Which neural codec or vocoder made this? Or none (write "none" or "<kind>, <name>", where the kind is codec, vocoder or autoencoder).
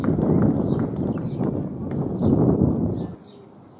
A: none